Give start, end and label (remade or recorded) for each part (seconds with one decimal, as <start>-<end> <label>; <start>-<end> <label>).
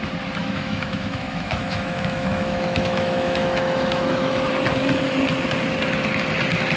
0.0-0.4 recorded; 0.4-4.5 remade; 4.5-6.8 recorded